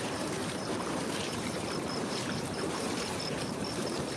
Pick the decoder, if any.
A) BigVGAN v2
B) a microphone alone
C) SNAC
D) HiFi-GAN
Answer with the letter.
A